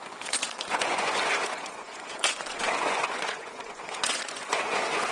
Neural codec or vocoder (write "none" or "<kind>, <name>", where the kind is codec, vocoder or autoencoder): vocoder, Vocos